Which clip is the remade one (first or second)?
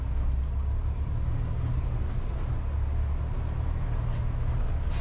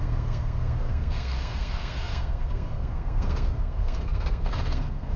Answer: second